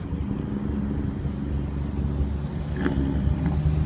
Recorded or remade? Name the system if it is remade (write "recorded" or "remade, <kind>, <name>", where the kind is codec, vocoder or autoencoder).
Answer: recorded